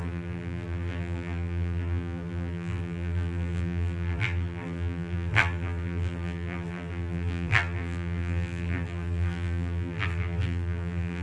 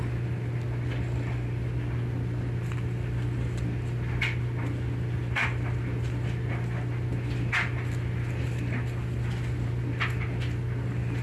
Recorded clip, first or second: second